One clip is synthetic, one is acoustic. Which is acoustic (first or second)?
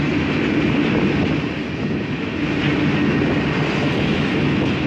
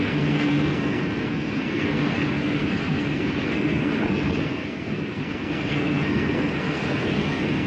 first